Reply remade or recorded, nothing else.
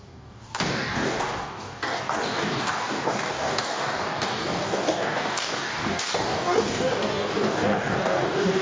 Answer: remade